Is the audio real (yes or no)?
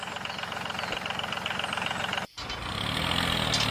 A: yes